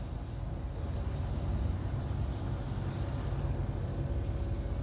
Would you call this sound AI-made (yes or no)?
no